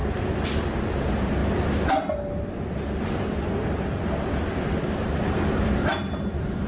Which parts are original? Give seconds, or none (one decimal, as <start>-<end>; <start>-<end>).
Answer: 0.0-0.7; 1.4-4.8